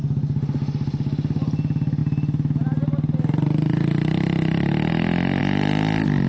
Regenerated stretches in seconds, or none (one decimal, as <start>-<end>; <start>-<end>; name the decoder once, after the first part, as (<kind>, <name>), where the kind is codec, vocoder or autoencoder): none